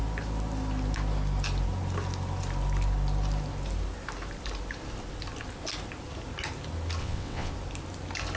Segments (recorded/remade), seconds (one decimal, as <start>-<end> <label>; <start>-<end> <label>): 0.0-7.0 recorded; 7.0-7.5 remade; 7.5-8.4 recorded